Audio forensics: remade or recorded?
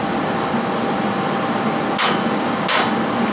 recorded